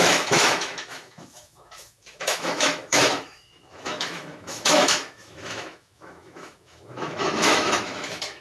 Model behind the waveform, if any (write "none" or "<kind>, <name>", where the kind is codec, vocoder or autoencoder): autoencoder, DAC-VAE